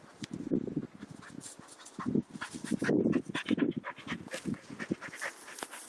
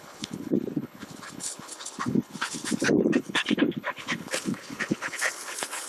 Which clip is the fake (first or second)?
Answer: second